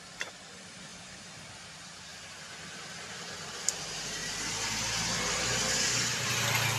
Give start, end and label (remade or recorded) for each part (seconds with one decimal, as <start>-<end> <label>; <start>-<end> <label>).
0.0-6.8 recorded